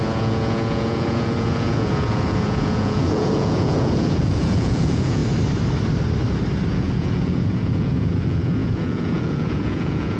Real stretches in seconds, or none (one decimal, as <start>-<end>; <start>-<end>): 5.2-6.7